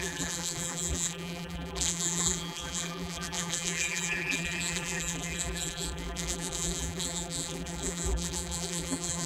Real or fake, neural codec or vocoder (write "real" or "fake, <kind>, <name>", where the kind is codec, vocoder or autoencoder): fake, vocoder, BigVGAN v2